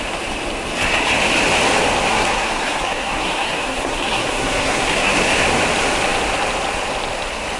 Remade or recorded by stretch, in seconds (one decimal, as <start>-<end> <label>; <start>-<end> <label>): 0.0-2.1 recorded; 2.1-5.1 remade; 5.1-7.6 recorded

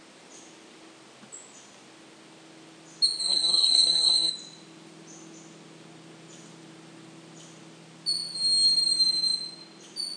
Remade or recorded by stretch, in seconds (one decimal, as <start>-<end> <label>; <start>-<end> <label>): 0.0-3.2 recorded; 3.2-4.3 remade; 4.3-10.2 recorded

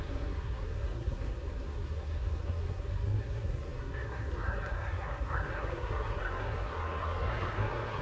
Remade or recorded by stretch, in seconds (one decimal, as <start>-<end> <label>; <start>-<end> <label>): 0.0-8.0 remade

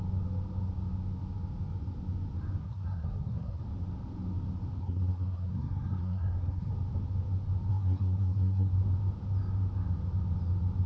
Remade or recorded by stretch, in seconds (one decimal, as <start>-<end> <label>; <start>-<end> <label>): 0.0-2.6 recorded; 2.6-3.6 remade; 3.6-4.8 recorded; 4.8-6.7 remade; 6.7-7.7 recorded; 7.7-8.7 remade; 8.7-10.9 recorded